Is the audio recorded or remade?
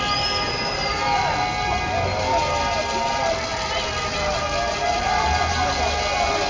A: recorded